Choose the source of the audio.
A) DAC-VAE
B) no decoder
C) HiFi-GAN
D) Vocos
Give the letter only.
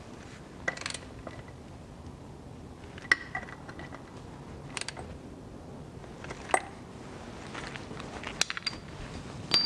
B